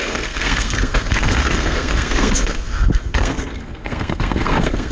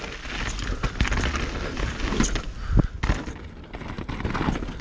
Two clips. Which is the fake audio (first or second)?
first